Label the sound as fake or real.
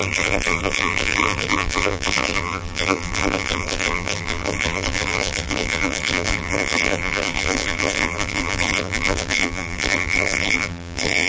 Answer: fake